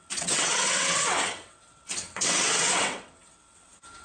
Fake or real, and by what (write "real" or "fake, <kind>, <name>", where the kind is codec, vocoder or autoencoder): fake, vocoder, WaveNeXt